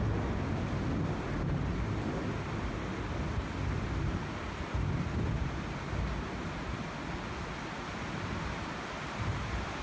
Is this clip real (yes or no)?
yes